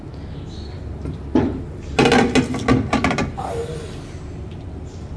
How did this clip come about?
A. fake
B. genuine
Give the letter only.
B